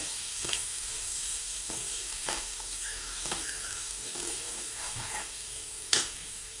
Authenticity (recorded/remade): remade